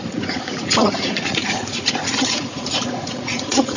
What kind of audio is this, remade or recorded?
remade